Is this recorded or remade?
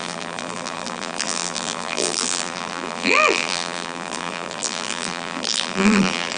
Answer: remade